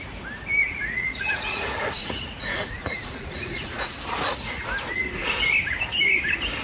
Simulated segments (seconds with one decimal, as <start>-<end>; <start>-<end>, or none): 0.6-4.0